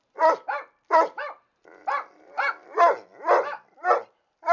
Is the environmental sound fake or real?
real